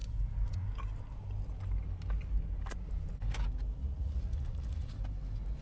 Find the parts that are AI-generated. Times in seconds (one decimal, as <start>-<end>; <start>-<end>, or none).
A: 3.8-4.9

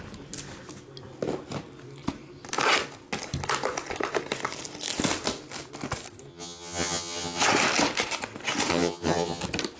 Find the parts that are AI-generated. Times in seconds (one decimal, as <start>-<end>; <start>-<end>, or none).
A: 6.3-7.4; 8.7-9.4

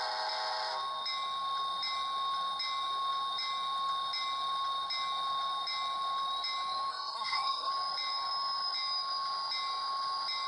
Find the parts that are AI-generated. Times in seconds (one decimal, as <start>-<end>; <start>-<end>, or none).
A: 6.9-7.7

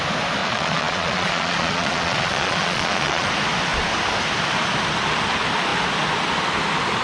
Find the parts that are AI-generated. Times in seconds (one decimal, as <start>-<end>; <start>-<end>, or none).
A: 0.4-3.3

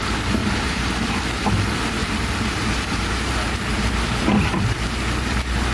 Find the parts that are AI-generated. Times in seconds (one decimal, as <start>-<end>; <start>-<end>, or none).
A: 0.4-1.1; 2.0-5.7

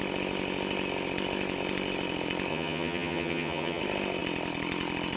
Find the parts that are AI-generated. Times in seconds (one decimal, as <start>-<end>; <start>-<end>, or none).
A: 2.5-3.8

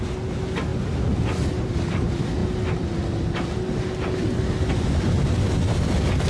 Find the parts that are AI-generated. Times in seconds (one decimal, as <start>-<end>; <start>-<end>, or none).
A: none